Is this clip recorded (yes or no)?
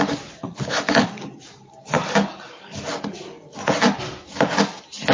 yes